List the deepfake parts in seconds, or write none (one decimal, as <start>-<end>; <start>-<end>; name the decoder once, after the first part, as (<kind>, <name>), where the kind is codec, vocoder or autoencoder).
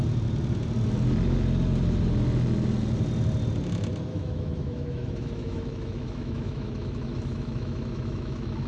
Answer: 4.1-8.7 (autoencoder, DAC-VAE)